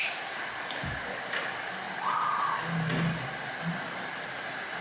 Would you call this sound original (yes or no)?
yes